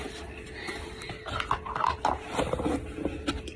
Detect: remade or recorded recorded